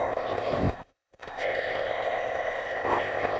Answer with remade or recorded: remade